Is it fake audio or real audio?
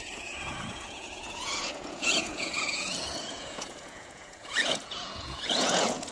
fake